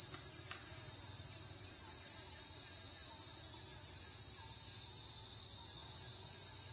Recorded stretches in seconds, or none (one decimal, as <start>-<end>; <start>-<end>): 0.0-5.8